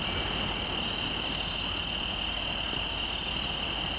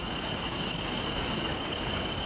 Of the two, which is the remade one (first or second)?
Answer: second